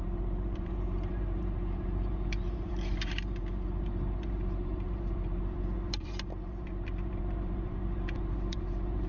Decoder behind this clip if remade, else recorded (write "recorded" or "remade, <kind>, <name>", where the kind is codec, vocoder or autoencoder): remade, vocoder, BigVGAN v2